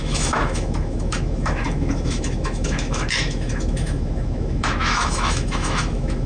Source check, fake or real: fake